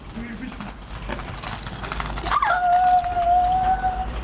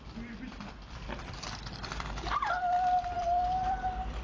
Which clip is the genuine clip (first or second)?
first